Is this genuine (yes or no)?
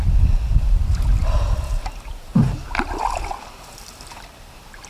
yes